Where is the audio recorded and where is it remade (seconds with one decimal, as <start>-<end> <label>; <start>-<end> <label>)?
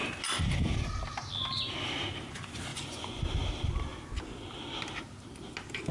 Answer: 0.0-2.7 recorded; 2.7-3.2 remade; 3.2-5.9 recorded